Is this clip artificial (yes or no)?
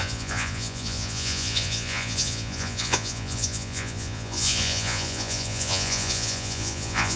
yes